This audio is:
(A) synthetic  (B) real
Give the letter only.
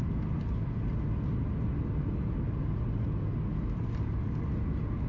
B